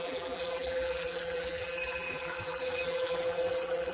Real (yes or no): no